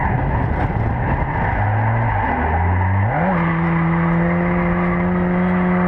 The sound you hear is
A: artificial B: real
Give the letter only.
B